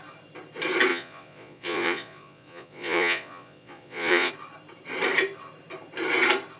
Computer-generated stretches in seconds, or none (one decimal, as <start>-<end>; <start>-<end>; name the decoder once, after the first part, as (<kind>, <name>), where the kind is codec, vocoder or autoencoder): 0.9-4.3 (vocoder, Vocos)